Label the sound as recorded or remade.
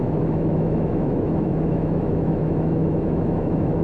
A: remade